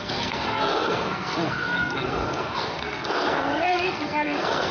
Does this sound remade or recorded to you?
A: remade